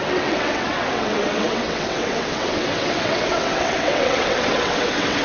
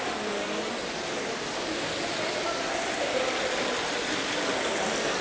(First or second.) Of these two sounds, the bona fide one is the second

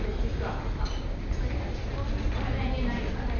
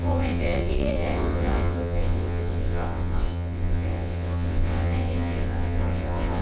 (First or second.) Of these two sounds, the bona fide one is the first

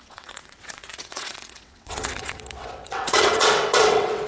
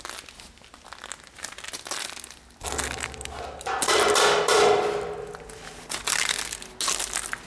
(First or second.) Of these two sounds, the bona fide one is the second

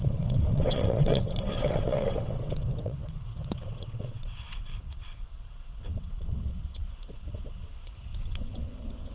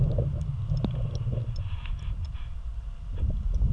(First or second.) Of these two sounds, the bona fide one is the second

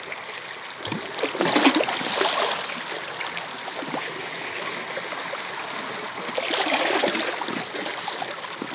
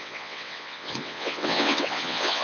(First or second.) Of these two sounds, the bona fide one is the first